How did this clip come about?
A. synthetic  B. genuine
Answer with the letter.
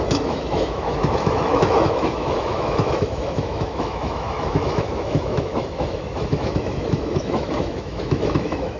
A